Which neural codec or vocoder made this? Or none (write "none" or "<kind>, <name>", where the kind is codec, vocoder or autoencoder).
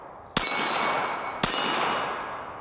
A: none